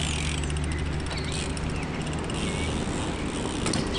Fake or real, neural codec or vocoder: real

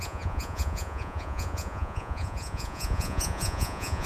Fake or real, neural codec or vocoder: fake, vocoder, Vocos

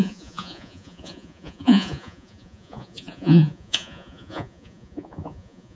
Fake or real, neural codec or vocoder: fake, vocoder, Vocos